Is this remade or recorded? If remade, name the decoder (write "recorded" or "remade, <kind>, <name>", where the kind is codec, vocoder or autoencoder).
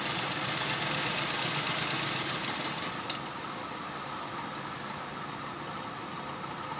recorded